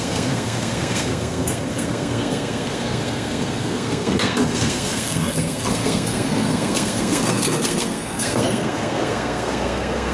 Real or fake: fake